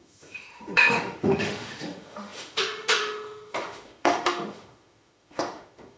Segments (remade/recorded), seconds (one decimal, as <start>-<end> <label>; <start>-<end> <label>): 0.0-6.0 remade